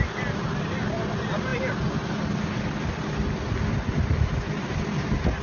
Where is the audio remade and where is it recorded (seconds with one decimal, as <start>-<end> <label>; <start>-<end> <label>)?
0.0-5.4 recorded